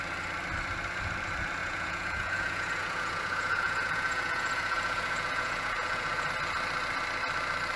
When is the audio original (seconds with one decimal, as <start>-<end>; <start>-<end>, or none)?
0.0-1.6; 6.3-7.8